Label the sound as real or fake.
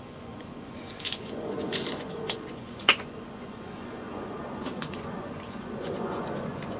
fake